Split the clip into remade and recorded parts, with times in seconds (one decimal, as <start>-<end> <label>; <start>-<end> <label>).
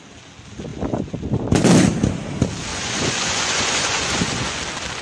0.0-2.7 recorded; 2.7-4.6 remade; 4.6-5.0 recorded